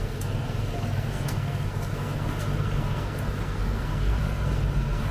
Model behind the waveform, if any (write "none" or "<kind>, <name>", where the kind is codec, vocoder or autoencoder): codec, SNAC